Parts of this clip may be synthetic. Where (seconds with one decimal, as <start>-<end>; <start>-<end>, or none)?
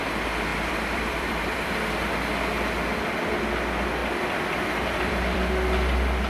0.5-1.7; 4.0-5.5